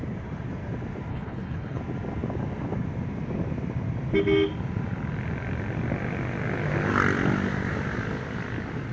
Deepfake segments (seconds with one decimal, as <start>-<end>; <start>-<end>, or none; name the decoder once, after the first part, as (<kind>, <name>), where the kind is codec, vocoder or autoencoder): 1.1-1.8 (codec, HILCodec)